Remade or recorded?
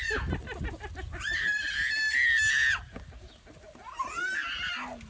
recorded